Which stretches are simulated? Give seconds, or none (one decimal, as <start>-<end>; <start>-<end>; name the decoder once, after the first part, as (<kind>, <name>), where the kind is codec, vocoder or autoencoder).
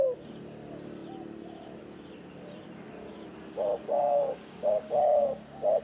3.7-5.8 (codec, DAC)